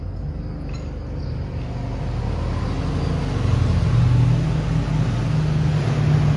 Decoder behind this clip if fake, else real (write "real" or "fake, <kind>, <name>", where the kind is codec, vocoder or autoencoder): real